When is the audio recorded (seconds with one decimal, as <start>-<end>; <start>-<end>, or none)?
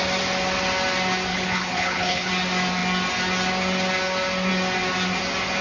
0.0-1.3; 2.3-5.6